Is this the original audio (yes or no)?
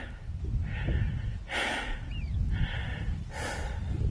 yes